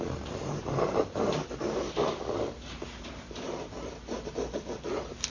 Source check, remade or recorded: recorded